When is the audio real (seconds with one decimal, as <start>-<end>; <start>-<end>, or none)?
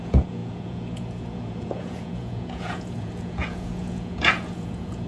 none